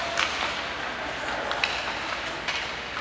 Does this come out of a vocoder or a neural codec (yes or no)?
no